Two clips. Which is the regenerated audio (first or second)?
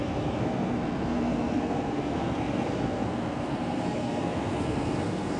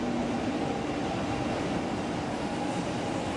first